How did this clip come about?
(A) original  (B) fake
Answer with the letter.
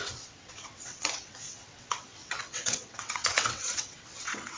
B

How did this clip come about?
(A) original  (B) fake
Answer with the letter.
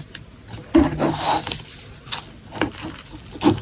A